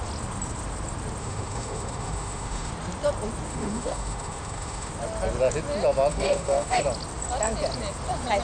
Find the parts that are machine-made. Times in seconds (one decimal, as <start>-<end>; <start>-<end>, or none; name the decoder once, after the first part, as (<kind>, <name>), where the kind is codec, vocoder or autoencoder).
1.2-2.7 (autoencoder, DAC-VAE); 3.5-4.9; 6.1-6.8